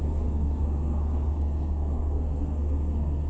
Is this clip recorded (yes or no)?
no